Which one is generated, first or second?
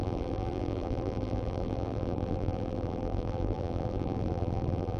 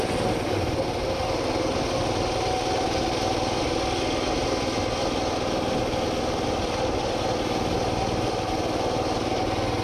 first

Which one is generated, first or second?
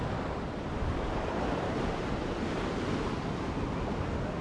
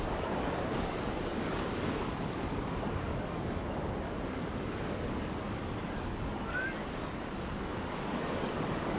second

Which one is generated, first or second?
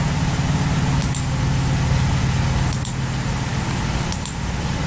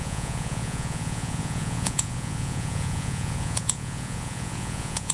second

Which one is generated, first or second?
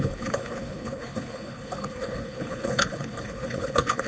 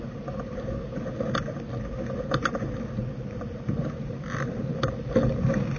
first